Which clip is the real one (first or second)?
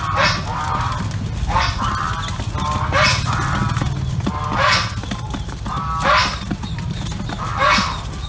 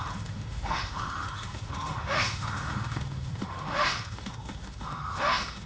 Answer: first